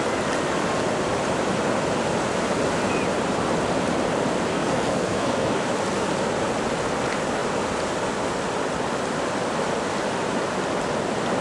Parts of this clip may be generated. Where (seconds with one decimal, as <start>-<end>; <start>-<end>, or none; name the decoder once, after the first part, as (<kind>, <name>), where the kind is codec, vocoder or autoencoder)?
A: 4.5-5.6 (codec, SNAC)